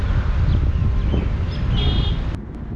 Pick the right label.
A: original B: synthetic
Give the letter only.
A